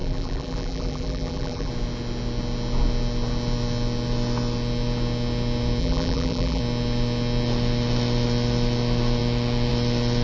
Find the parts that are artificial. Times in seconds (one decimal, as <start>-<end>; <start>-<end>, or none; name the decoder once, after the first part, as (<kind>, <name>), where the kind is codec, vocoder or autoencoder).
0.0-1.7 (vocoder, BigVGAN v2); 5.8-6.6